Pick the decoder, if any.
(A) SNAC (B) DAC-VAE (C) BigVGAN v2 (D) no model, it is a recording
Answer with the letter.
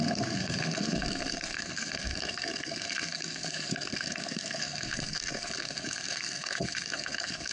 A